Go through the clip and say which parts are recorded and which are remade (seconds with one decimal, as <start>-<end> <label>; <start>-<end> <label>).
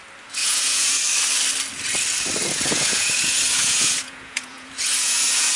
0.0-0.4 recorded; 0.4-1.0 remade; 1.0-2.4 recorded; 2.4-5.6 remade